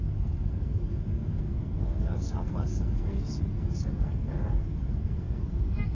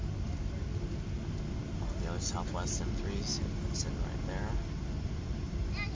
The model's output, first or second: first